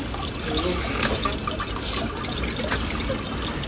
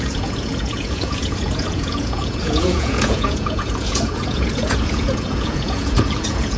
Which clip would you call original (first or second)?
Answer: first